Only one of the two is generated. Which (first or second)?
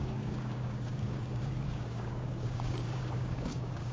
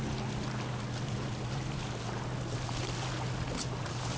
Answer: first